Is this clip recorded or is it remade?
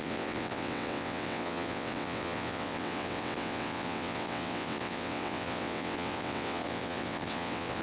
remade